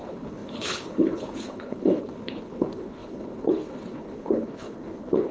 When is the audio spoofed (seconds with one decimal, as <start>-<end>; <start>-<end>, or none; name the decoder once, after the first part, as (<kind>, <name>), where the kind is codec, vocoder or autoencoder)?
0.0-5.3 (codec, HILCodec)